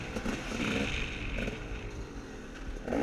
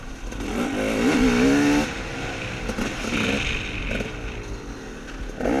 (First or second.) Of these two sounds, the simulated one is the first